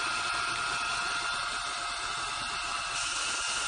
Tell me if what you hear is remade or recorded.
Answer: recorded